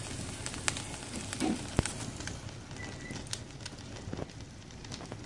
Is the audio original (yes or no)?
yes